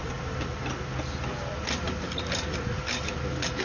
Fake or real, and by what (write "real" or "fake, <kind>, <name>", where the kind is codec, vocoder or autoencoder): real